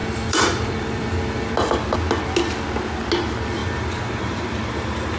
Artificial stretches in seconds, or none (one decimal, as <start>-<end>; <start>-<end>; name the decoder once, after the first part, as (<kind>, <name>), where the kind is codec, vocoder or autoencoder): 0.0-1.0 (vocoder, BigVGAN v2); 3.6-5.2